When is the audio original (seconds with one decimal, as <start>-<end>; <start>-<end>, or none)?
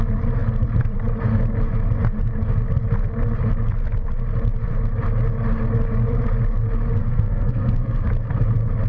0.0-7.0; 8.1-8.9